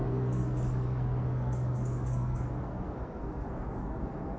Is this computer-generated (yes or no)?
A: yes